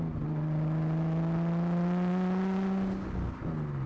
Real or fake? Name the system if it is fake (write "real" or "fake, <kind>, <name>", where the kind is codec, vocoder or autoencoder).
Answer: real